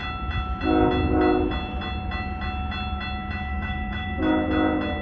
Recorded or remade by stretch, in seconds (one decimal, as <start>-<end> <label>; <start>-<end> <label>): 0.0-3.5 recorded; 3.5-4.3 remade; 4.3-5.0 recorded